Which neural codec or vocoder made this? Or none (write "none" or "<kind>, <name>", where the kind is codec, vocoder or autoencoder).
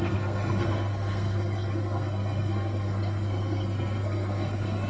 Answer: codec, SNAC